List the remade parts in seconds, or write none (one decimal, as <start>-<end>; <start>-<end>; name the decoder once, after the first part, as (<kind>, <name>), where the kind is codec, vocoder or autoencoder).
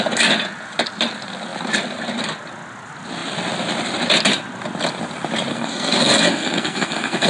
5.5-7.3 (codec, SNAC)